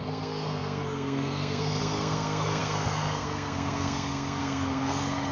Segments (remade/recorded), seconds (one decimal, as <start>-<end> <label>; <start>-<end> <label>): 0.0-5.3 remade